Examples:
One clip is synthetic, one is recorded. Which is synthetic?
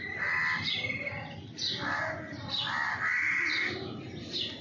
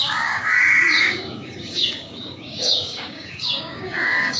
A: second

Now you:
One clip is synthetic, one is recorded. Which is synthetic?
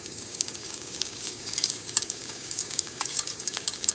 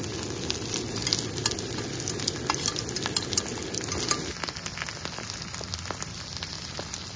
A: first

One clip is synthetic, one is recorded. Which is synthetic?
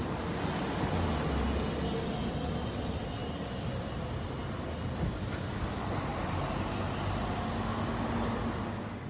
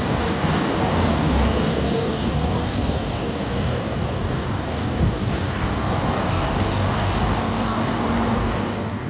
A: second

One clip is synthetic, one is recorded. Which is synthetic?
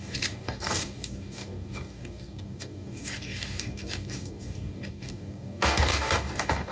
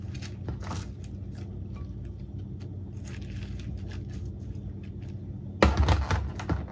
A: first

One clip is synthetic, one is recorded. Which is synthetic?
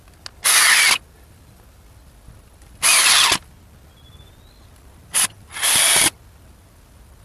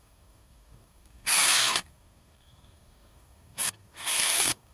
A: second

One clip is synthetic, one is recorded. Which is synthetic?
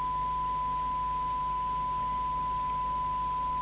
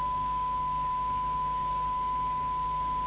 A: second